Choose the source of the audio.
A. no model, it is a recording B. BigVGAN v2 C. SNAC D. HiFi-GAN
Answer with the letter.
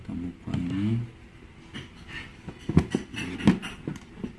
A